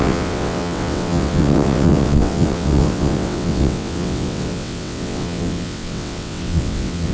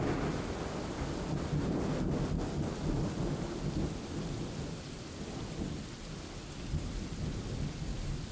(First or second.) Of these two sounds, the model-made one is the first